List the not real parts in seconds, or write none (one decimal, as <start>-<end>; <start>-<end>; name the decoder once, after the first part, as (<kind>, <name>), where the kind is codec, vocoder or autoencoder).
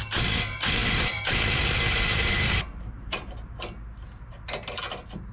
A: 0.8-3.6 (vocoder, BigVGAN v2)